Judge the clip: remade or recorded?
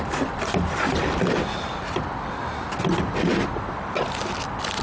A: recorded